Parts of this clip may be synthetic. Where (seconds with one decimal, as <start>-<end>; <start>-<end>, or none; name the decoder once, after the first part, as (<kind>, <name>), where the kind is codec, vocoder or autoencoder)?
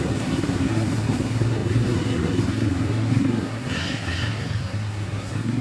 0.0-5.6 (codec, SNAC)